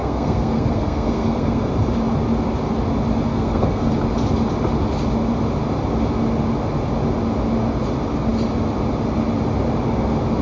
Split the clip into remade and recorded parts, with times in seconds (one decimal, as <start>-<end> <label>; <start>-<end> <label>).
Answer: 0.0-1.7 remade; 1.7-3.3 recorded; 3.3-3.9 remade; 3.9-10.4 recorded

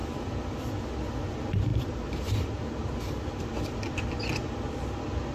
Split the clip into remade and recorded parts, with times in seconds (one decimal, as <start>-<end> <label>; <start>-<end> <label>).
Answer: 0.0-1.7 recorded; 1.7-3.4 remade; 3.4-5.3 recorded

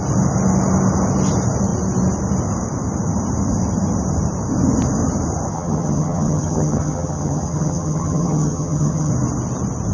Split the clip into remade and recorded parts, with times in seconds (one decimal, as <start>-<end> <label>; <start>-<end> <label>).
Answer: 0.0-5.5 recorded; 5.5-9.1 remade; 9.1-9.9 recorded

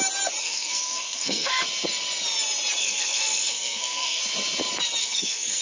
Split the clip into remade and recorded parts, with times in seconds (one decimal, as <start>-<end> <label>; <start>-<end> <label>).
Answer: 0.0-0.4 recorded; 0.4-1.6 remade; 1.6-2.8 recorded; 2.8-4.2 remade; 4.2-5.0 recorded; 5.0-5.6 remade

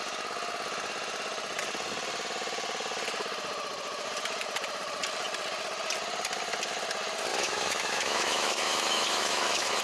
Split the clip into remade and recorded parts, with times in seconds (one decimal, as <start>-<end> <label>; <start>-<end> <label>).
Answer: 0.0-7.3 recorded; 7.3-9.8 remade

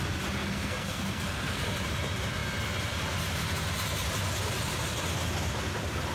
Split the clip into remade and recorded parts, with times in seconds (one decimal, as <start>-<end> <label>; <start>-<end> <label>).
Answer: 0.0-0.4 recorded; 0.4-1.6 remade; 1.6-6.1 recorded

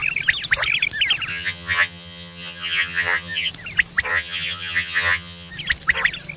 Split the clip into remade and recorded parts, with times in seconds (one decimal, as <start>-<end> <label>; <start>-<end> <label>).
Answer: 0.0-1.3 recorded; 1.3-3.5 remade; 3.5-4.1 recorded; 4.1-5.5 remade; 5.5-6.4 recorded